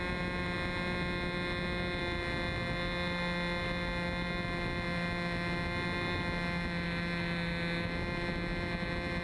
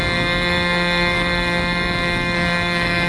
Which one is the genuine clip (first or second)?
first